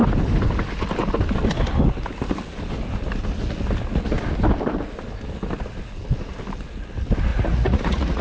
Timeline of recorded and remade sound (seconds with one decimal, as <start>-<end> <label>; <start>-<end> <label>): 0.0-7.3 recorded; 7.3-8.2 remade